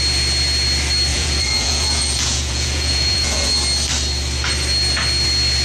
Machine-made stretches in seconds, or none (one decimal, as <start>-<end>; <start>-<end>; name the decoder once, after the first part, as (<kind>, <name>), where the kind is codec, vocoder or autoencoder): 1.1-3.5 (vocoder, Vocos)